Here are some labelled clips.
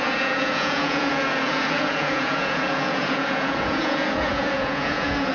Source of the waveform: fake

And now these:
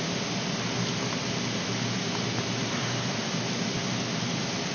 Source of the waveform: real